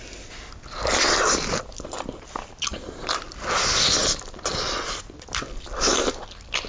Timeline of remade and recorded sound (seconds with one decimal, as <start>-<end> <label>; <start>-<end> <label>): 0.0-6.7 recorded